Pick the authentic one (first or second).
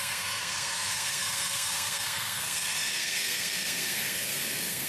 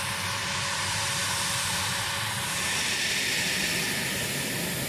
second